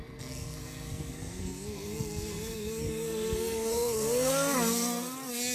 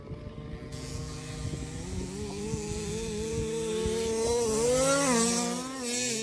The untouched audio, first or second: second